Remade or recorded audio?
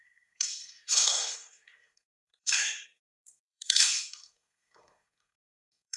remade